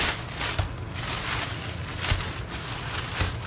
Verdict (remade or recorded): recorded